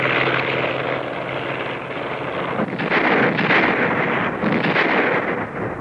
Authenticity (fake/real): real